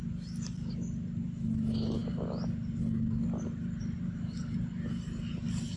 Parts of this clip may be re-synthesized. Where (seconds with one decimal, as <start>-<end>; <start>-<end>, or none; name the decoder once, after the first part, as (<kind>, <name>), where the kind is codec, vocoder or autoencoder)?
none